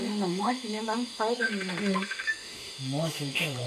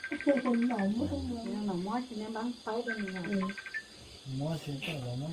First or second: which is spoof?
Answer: first